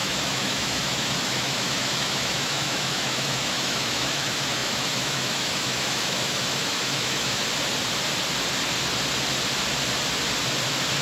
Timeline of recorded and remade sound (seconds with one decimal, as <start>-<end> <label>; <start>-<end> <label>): 0.0-7.4 remade; 7.4-11.0 recorded